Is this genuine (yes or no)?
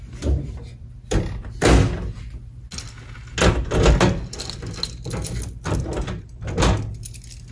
yes